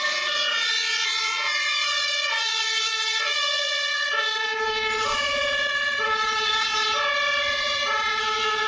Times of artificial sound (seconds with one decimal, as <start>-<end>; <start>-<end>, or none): 0.0-6.7; 7.5-8.7